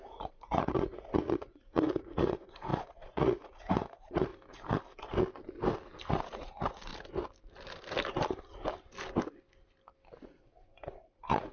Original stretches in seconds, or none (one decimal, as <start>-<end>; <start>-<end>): 4.3-6.1; 6.9-10.2